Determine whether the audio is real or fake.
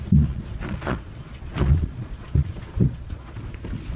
fake